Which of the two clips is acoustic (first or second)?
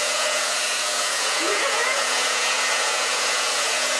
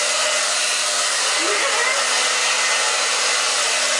second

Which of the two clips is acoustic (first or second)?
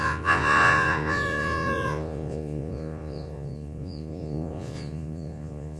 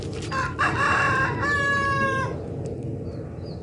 second